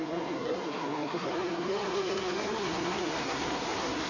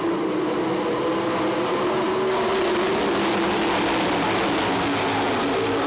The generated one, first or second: first